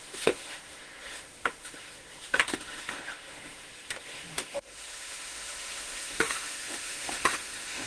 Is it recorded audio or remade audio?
remade